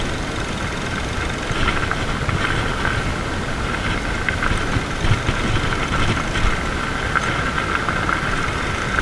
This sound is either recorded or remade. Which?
recorded